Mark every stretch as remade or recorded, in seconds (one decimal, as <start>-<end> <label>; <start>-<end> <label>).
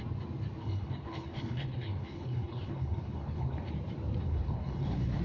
0.0-0.6 recorded; 0.6-3.7 remade; 3.7-4.2 recorded; 4.2-5.2 remade